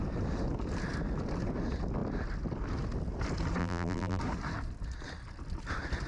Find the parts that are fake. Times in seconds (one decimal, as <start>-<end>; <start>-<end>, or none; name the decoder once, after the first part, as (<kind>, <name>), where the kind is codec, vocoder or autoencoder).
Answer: 3.6-4.2 (vocoder, BigVGAN v2)

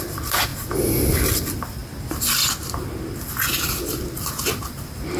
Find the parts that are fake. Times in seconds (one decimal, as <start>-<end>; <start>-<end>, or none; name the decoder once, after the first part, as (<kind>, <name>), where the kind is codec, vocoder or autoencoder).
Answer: 0.0-0.5 (vocoder, BigVGAN v2); 1.3-1.8; 3.5-5.2

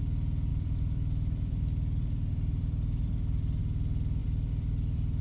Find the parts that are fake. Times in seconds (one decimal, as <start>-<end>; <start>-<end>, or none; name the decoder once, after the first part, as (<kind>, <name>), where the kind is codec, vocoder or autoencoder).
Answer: 0.5-3.6 (vocoder, BigVGAN v2); 4.2-5.2